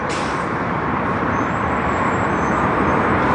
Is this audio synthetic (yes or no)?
yes